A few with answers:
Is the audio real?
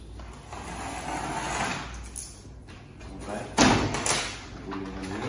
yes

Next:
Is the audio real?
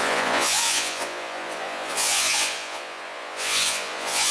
no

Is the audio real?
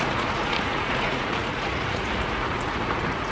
no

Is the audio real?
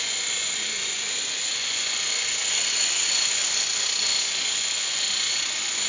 no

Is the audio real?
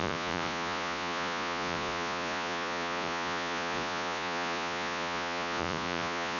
no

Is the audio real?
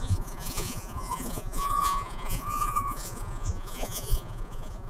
no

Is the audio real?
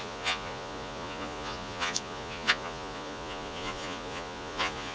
no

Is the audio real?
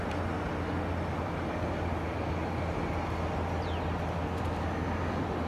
yes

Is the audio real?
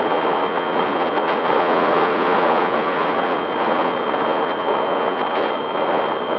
no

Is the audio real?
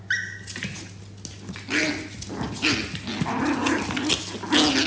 yes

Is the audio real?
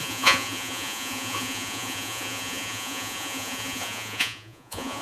no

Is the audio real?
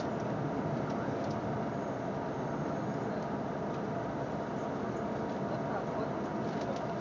yes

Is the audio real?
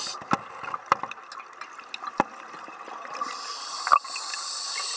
yes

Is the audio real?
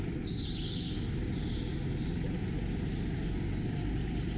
yes